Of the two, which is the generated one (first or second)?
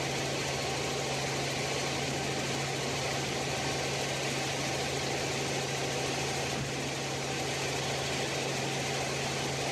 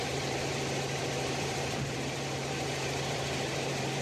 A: second